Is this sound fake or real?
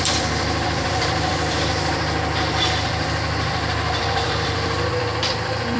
fake